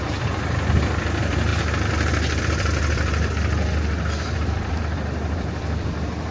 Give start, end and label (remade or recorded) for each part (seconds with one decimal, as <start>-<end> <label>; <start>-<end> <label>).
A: 0.0-1.5 remade; 1.5-2.4 recorded; 2.4-6.3 remade